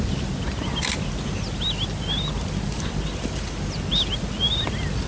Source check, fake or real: real